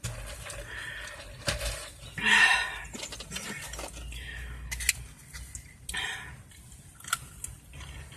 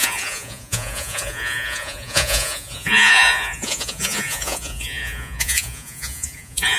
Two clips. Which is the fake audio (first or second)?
second